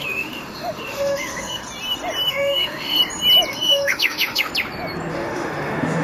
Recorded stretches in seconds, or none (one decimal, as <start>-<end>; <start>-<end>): 1.6-2.3; 3.0-3.5; 4.5-5.1